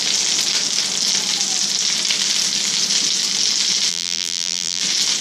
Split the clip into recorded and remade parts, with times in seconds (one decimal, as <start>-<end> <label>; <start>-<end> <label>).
0.0-3.9 recorded; 3.9-4.8 remade; 4.8-5.2 recorded